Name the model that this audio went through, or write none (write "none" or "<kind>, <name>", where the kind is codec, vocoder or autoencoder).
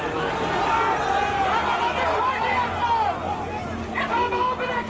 none